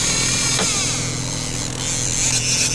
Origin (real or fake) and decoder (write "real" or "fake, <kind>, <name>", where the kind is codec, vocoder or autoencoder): real